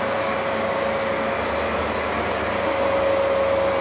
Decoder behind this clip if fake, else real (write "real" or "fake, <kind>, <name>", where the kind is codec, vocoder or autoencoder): real